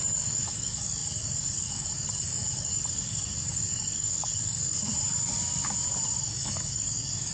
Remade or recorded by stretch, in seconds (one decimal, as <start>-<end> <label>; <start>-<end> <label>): 0.0-4.9 remade; 4.9-6.2 recorded; 6.2-7.3 remade